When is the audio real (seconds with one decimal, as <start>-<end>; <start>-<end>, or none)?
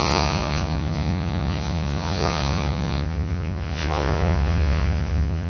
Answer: none